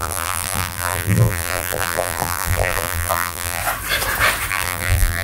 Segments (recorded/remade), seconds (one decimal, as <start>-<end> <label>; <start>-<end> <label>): 0.0-3.6 remade; 3.6-4.5 recorded; 4.5-5.2 remade